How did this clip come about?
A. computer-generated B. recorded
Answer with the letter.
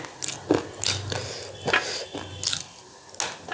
B